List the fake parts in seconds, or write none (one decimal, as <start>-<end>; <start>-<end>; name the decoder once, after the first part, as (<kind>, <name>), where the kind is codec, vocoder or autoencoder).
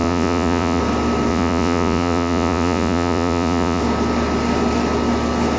0.0-0.8 (vocoder, Vocos); 1.3-3.8